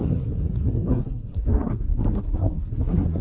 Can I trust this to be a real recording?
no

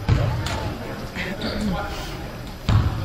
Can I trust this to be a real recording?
yes